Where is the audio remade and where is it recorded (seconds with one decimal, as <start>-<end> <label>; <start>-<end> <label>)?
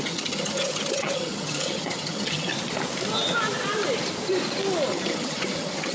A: 0.0-2.5 remade; 2.5-4.9 recorded; 4.9-5.9 remade